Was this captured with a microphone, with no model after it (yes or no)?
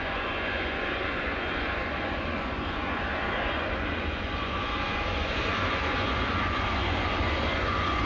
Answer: no